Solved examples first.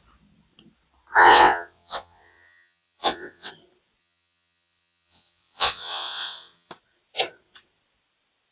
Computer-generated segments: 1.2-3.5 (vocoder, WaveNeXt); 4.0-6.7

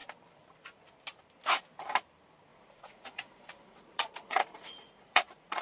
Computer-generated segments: 2.5-5.6 (vocoder, Vocos)

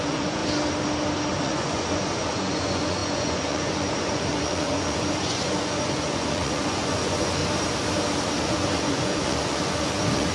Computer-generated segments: 0.0-0.4 (vocoder, Vocos); 1.4-7.4; 8.5-10.3

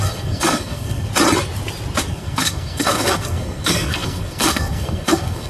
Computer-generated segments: 0.0-1.1 (codec, SNAC); 2.1-5.5

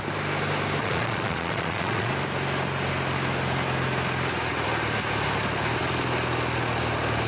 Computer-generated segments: 0.8-2.1 (vocoder, Vocos)

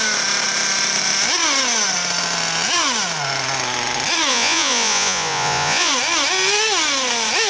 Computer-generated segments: 4.3-5.9 (vocoder, Vocos)